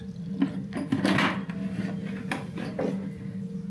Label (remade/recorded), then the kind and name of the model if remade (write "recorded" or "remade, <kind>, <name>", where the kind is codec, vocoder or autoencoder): recorded